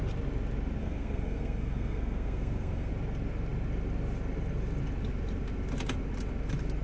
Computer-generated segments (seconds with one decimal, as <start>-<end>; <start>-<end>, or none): 0.8-2.9